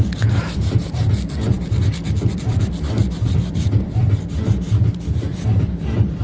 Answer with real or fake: fake